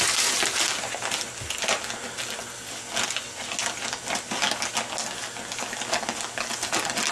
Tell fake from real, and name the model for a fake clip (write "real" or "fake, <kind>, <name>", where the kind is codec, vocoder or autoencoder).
real